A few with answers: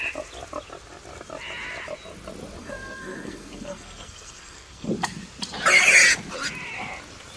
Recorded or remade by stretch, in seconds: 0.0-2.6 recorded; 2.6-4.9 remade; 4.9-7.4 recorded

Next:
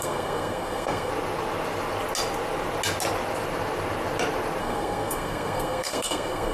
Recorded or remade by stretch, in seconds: 0.0-1.1 remade; 1.1-4.6 recorded; 4.6-6.5 remade

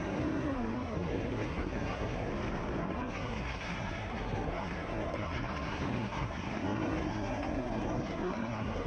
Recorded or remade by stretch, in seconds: 0.0-2.3 remade; 2.3-2.8 recorded; 2.8-8.9 remade

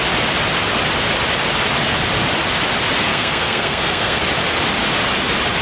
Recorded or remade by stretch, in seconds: 0.0-3.1 recorded; 3.1-4.2 remade; 4.2-5.6 recorded